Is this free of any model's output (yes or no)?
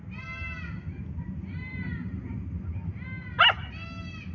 yes